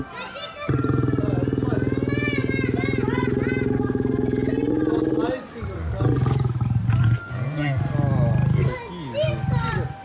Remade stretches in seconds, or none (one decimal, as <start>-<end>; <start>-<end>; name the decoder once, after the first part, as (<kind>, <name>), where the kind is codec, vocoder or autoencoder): none